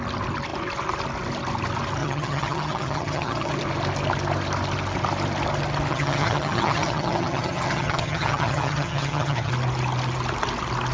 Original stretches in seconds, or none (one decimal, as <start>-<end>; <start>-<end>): 0.0-2.0; 3.5-5.9; 9.5-10.9